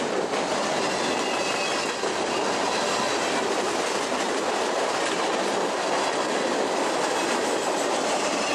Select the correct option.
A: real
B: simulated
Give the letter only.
A